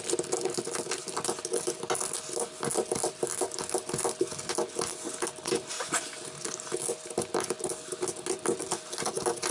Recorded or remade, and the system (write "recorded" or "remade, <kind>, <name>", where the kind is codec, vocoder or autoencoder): recorded